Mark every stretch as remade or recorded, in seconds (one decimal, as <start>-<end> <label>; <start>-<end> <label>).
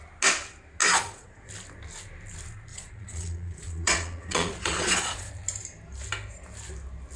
0.0-0.8 recorded; 0.8-1.5 remade; 1.5-2.7 recorded; 2.7-5.3 remade; 5.3-7.2 recorded